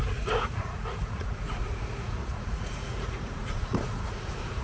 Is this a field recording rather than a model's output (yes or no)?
no